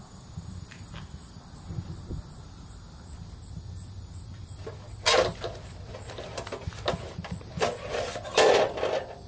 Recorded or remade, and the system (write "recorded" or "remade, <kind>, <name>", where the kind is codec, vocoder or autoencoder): recorded